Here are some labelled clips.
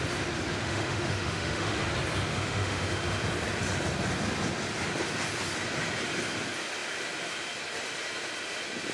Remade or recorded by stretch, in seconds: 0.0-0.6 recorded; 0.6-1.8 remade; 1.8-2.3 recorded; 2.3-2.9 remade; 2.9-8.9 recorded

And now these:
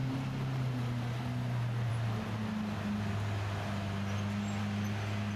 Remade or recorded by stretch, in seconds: 0.0-5.4 recorded

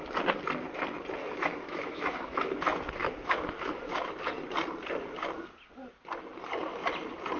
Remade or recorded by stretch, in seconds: 0.0-1.2 recorded; 1.2-2.6 remade; 2.6-3.0 recorded; 3.0-4.1 remade; 4.1-7.4 recorded

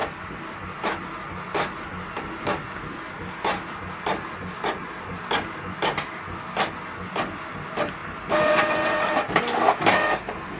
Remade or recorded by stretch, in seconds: 0.0-10.6 recorded

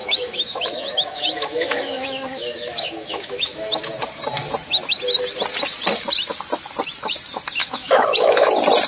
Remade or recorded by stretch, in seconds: 0.0-3.8 remade; 3.8-7.6 recorded; 7.6-8.5 remade; 8.5-8.9 recorded

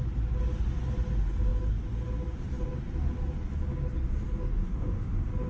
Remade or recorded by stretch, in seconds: 0.0-4.6 recorded; 4.6-5.1 remade; 5.1-5.5 recorded

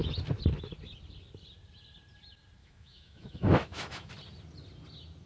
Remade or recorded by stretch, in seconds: 0.0-2.6 recorded; 2.6-4.1 remade; 4.1-5.3 recorded